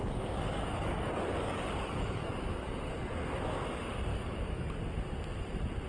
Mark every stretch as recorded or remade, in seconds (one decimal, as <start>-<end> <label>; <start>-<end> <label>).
0.0-2.9 remade; 2.9-4.1 recorded; 4.1-4.7 remade; 4.7-5.9 recorded